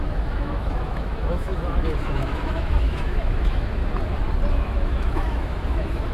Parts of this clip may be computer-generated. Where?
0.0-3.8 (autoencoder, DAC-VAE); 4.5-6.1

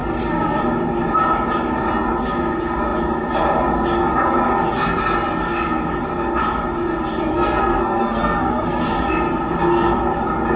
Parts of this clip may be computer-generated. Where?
0.0-0.6 (codec, SNAC); 7.3-8.8

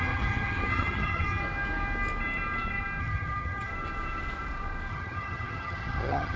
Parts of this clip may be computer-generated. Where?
0.0-1.4 (vocoder, HiFi-GAN); 3.0-3.7; 4.9-6.4

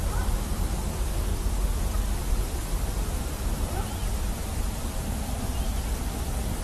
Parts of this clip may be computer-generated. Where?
0.0-0.7 (vocoder, BigVGAN v2); 1.3-1.8; 2.3-4.6